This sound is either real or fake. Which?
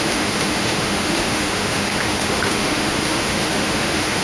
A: fake